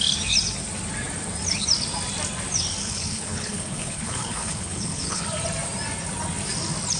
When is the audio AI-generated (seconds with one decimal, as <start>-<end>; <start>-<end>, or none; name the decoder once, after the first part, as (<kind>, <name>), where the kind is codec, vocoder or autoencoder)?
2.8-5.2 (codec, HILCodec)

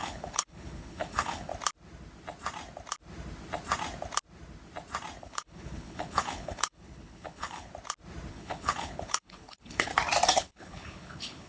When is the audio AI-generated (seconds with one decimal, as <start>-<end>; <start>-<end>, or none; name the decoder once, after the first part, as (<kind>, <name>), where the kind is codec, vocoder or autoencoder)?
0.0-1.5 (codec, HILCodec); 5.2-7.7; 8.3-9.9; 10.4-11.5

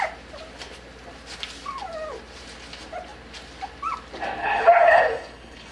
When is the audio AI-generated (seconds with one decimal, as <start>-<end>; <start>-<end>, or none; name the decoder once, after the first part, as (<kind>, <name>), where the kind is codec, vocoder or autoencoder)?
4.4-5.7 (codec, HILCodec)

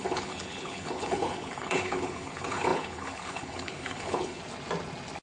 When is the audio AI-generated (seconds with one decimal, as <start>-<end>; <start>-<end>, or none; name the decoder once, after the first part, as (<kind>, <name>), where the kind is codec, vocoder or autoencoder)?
0.0-4.4 (codec, HILCodec)

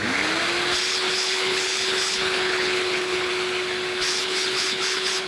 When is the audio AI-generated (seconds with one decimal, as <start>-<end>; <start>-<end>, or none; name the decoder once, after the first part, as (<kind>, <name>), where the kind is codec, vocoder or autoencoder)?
0.9-3.3 (codec, HILCodec); 4.1-5.3